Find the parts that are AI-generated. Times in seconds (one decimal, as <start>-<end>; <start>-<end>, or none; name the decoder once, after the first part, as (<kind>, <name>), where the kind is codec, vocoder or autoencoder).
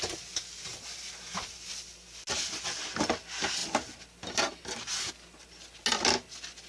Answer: none